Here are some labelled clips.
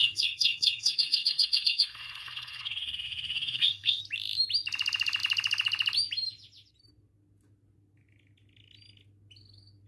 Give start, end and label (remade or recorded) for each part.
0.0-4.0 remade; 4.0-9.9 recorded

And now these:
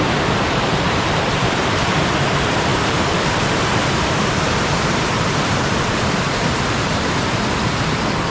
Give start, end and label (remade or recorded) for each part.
0.0-8.3 remade